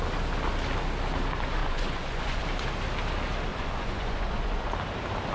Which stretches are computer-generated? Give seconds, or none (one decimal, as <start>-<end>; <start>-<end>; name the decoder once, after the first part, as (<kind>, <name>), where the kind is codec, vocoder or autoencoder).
1.6-2.4 (vocoder, Vocos); 3.5-4.7